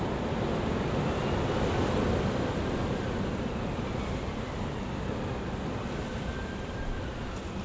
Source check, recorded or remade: recorded